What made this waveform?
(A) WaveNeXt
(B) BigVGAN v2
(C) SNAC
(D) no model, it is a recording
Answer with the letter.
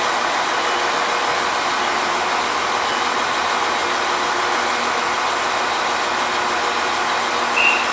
D